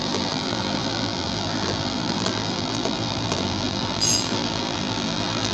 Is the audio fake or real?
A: fake